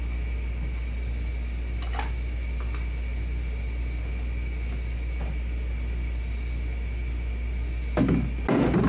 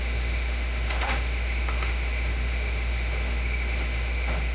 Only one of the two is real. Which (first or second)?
first